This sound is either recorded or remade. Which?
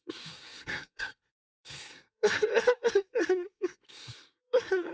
remade